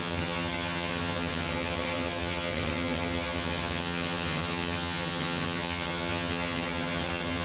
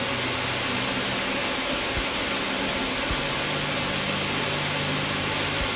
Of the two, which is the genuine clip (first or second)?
second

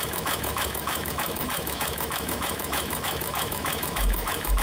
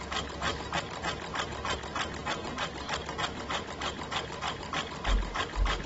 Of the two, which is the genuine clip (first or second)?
second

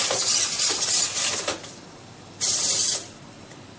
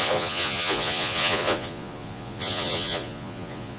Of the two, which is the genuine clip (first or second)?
first